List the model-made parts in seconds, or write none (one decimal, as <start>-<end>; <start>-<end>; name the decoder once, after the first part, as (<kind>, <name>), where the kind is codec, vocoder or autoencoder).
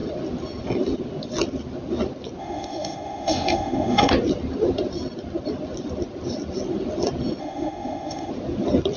2.4-4.1 (autoencoder, DAC-VAE); 7.4-8.3